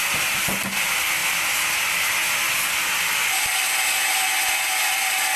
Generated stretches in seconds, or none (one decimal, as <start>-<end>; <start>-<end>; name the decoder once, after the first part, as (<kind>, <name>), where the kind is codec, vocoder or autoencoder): none

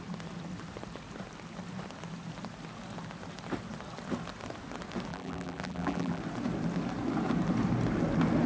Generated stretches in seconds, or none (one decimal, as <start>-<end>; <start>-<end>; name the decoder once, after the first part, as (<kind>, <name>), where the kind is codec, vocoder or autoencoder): 5.1-6.2 (vocoder, BigVGAN v2)

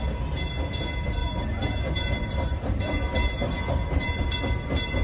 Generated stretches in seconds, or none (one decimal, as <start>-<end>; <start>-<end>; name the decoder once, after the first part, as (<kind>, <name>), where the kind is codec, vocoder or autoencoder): 1.2-4.2 (vocoder, BigVGAN v2)